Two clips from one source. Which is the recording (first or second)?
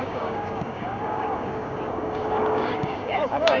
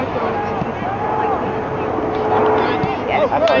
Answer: second